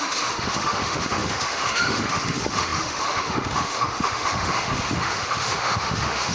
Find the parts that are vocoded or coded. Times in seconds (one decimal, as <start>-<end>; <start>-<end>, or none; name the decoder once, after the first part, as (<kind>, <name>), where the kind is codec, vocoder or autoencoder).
0.0-6.3 (autoencoder, DAC-VAE)

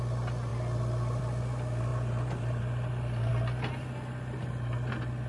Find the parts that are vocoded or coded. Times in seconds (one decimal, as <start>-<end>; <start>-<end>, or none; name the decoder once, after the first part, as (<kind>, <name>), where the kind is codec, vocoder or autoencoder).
none

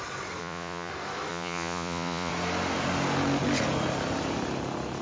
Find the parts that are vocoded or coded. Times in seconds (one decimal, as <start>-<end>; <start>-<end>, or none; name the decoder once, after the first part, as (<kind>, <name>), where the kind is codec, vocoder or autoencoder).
0.4-0.9 (vocoder, Vocos); 1.3-2.3